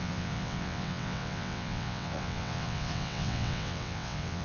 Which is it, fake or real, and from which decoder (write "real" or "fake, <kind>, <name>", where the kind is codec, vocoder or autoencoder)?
fake, vocoder, WaveNeXt